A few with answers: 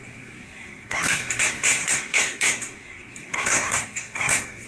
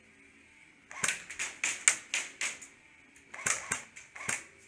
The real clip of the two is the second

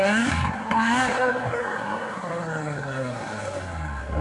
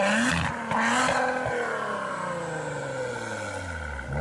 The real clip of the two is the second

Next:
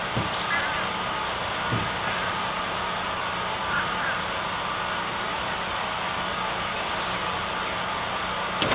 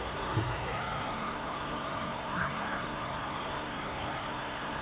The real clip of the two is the first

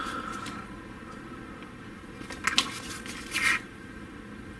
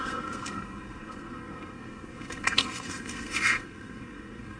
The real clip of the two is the first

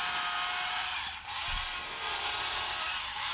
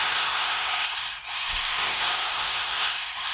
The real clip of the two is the first